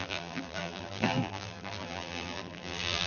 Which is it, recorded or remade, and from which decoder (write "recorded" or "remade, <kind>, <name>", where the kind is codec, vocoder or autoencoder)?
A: remade, vocoder, BigVGAN v2